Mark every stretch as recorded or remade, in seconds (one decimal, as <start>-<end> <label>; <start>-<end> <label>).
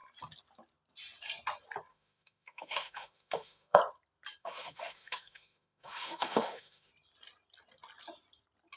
0.0-1.9 recorded; 1.9-3.8 remade; 3.8-4.4 recorded; 4.4-6.9 remade; 6.9-8.8 recorded